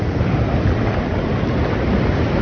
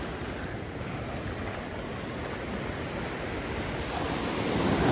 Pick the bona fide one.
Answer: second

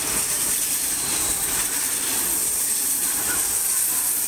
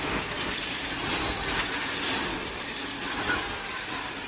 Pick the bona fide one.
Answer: second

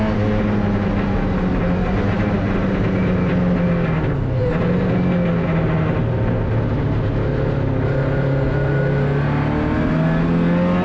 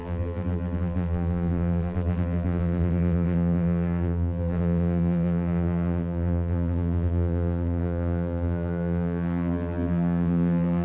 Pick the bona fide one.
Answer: first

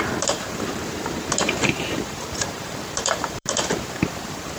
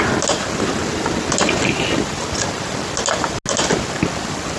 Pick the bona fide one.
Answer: second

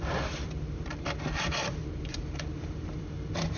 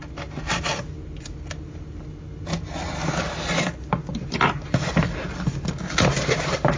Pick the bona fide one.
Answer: second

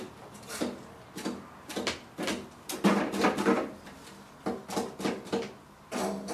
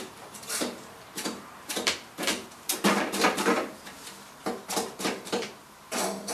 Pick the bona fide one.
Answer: first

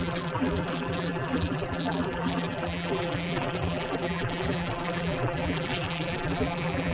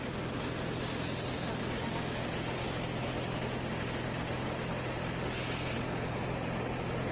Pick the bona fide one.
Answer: second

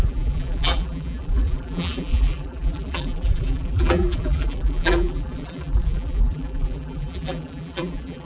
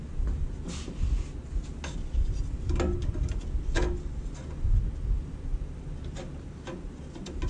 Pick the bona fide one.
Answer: second